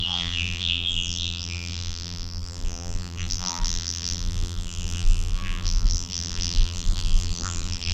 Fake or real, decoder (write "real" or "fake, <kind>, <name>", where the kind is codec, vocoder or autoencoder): fake, vocoder, BigVGAN v2